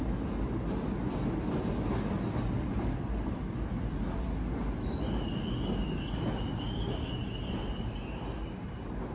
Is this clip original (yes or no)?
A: yes